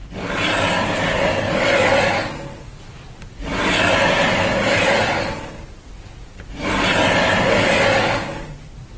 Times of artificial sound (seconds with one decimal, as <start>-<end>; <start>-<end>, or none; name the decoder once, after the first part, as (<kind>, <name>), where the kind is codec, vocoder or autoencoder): none